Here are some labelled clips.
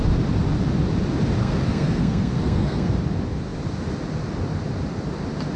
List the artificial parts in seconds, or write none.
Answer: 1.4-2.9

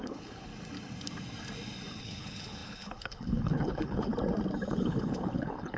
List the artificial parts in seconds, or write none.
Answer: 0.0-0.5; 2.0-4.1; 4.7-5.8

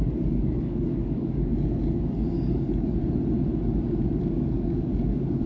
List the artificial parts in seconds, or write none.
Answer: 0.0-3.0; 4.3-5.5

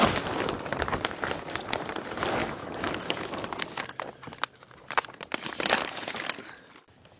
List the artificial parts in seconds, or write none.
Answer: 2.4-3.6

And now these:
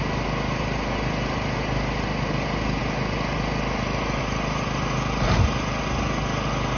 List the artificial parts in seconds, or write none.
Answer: none